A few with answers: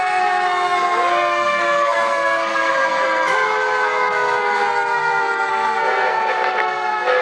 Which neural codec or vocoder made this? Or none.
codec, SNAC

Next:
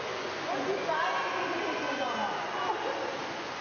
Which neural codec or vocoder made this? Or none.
vocoder, Vocos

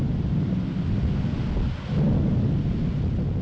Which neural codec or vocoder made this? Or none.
none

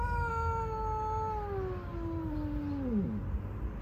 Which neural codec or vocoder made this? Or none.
none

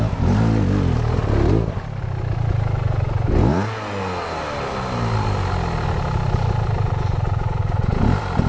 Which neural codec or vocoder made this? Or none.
none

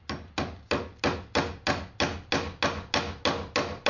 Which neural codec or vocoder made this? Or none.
none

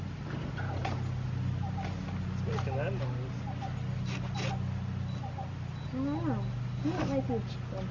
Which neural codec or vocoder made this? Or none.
none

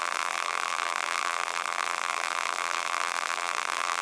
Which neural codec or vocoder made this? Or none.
vocoder, BigVGAN v2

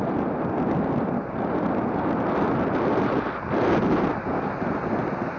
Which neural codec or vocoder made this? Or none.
none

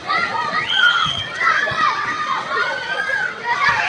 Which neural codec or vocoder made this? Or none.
vocoder, WaveNeXt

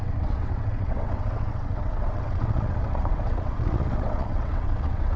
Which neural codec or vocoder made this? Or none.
vocoder, WaveNeXt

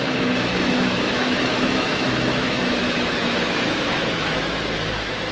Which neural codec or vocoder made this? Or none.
autoencoder, DAC-VAE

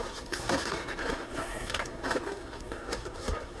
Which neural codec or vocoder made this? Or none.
codec, SNAC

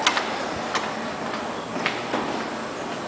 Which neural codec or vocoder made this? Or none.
none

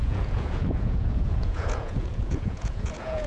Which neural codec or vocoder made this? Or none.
vocoder, Vocos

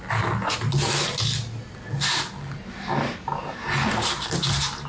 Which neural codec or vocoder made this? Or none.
none